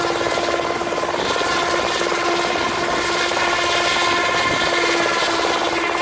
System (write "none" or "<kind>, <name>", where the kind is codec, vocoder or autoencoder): none